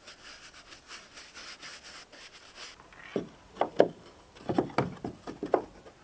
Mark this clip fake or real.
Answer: real